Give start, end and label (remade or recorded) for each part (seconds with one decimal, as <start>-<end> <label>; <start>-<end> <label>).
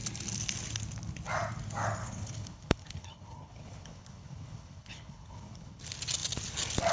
0.0-2.0 recorded; 2.0-5.8 remade; 5.8-6.9 recorded